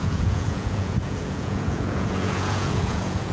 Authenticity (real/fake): fake